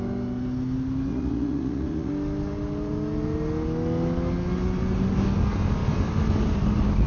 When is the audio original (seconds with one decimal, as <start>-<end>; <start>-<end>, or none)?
0.0-1.1; 2.1-7.1